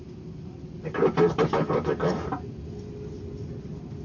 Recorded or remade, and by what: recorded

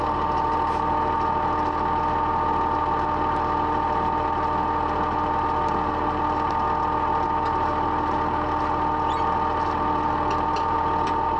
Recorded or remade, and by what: recorded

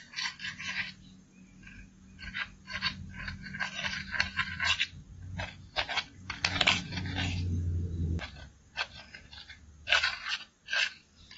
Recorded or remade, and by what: recorded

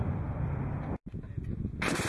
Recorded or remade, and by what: recorded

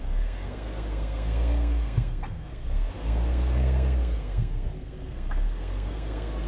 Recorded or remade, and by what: remade, codec, SNAC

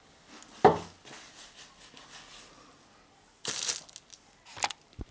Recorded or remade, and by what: recorded